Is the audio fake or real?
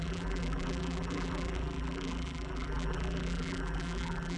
fake